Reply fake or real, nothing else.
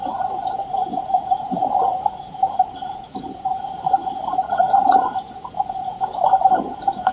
fake